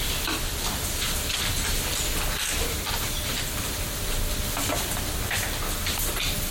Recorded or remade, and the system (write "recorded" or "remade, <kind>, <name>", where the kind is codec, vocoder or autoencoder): recorded